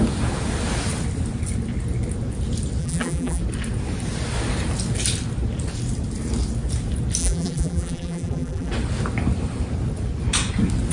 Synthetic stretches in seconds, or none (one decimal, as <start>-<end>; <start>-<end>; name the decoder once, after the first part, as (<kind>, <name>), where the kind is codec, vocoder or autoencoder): 2.8-3.4 (vocoder, BigVGAN v2); 7.2-8.7